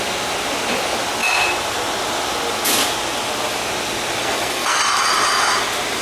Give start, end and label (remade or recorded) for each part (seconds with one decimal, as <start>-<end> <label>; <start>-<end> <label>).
0.0-4.2 recorded; 4.2-4.8 remade; 4.8-6.0 recorded